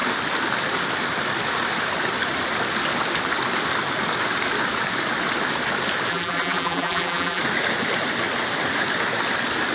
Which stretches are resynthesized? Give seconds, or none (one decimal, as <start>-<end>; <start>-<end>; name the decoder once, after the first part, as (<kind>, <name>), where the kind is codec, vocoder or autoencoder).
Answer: 6.1-7.4 (vocoder, BigVGAN v2)